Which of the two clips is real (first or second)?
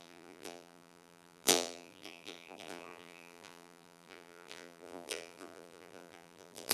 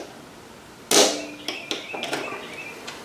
second